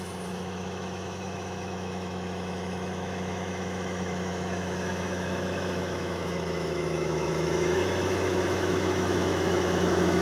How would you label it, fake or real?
fake